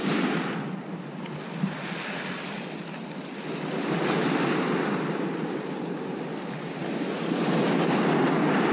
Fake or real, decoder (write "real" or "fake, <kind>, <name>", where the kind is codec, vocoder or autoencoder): real